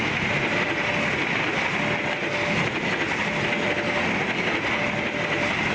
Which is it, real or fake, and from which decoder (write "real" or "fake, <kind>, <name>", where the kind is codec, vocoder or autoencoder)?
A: real